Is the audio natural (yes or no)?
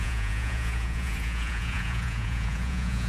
no